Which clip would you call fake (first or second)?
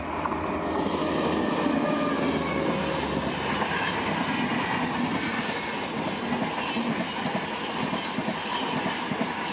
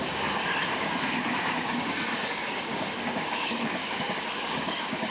second